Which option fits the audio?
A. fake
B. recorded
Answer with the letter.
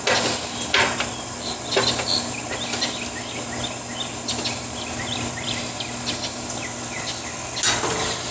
B